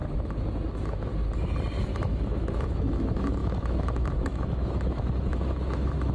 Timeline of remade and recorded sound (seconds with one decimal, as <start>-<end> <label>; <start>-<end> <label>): 0.0-0.7 recorded; 0.7-1.1 remade; 1.1-1.8 recorded; 1.8-6.1 remade